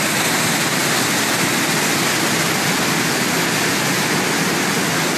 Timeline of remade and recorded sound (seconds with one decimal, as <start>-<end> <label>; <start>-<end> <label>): 0.0-5.2 recorded